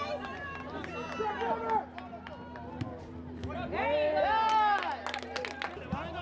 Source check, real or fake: real